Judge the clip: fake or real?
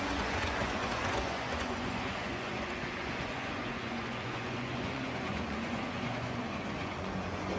fake